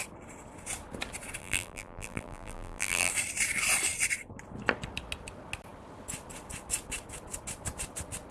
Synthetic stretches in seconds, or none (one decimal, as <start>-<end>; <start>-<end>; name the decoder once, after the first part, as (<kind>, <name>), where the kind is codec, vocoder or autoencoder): 1.4-3.1 (vocoder, BigVGAN v2)